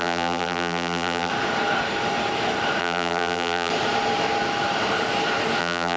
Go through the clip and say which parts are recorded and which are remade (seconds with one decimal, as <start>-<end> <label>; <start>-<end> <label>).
0.0-1.3 remade; 1.3-2.8 recorded; 2.8-3.7 remade; 3.7-5.6 recorded; 5.6-6.0 remade